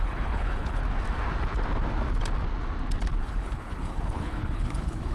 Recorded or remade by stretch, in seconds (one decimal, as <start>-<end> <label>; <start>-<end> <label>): 0.0-0.8 remade; 0.8-3.2 recorded; 3.2-5.1 remade